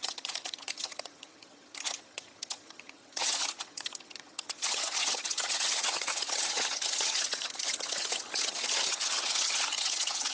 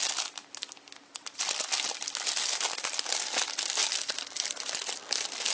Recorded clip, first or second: second